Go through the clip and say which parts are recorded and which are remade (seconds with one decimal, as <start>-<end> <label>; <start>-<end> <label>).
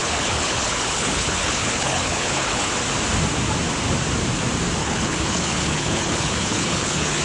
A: 0.0-2.7 remade; 2.7-4.8 recorded; 4.8-7.2 remade